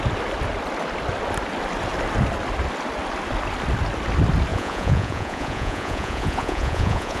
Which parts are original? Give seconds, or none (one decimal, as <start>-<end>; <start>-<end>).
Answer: 0.0-4.5